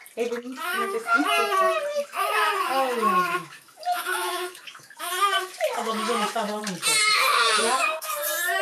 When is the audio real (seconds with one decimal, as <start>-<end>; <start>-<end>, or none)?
0.0-0.7; 1.2-1.9; 6.6-7.6; 8.1-8.6